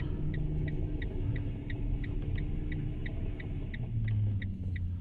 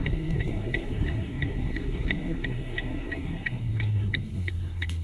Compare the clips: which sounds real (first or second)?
first